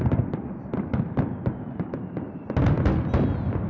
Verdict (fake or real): real